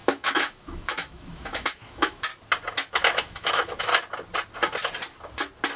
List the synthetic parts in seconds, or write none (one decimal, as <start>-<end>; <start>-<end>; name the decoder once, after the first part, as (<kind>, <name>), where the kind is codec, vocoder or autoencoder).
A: 0.0-2.3 (autoencoder, DAC-VAE); 2.9-3.9

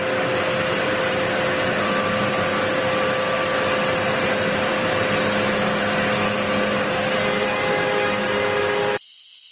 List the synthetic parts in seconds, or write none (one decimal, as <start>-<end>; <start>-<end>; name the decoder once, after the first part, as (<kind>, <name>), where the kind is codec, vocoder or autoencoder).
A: none

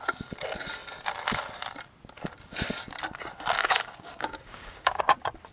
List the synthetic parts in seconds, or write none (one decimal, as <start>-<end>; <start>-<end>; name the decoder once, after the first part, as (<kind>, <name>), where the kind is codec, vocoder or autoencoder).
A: 3.6-5.0 (codec, DAC)

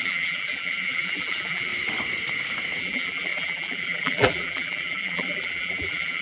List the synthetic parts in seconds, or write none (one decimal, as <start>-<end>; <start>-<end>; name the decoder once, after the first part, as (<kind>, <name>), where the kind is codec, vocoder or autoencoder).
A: 0.0-1.7 (vocoder, BigVGAN v2); 2.8-6.2

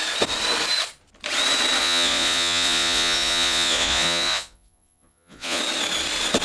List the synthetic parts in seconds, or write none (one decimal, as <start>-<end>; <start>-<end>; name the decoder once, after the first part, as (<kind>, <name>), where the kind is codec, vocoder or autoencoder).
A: 1.8-5.6 (vocoder, Vocos)

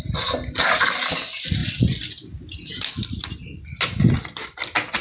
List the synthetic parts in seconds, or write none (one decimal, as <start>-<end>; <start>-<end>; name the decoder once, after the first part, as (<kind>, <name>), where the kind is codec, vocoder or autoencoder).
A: none

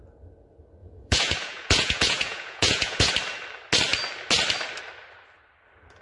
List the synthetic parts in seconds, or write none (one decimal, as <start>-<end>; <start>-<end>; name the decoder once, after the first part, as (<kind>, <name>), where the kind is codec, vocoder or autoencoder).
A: 0.8-3.1 (vocoder, Vocos)